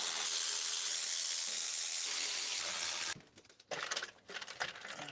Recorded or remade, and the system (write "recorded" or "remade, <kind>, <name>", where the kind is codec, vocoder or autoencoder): recorded